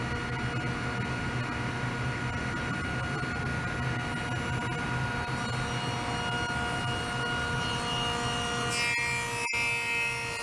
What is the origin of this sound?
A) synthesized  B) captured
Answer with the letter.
B